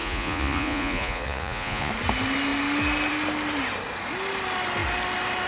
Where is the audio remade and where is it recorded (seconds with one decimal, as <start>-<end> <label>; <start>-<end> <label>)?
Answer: 0.0-1.9 remade; 1.9-5.5 recorded